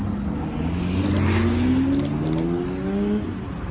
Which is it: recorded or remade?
recorded